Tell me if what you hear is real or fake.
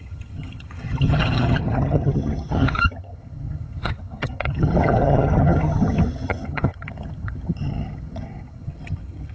fake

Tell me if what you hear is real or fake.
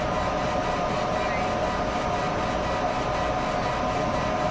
real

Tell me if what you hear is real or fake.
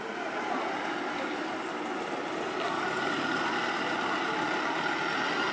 real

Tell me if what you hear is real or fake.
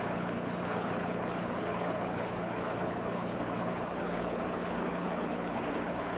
fake